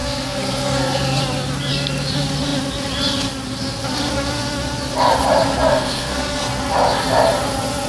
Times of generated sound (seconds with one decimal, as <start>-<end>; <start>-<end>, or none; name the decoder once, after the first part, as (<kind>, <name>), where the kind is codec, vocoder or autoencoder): 0.0-1.2 (codec, SNAC); 5.7-6.4